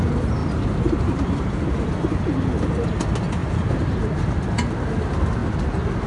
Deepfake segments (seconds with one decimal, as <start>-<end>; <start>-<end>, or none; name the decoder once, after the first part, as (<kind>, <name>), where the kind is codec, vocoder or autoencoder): 0.4-1.9 (vocoder, BigVGAN v2); 3.4-4.0